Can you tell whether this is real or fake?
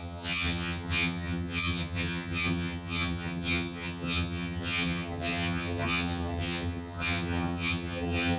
fake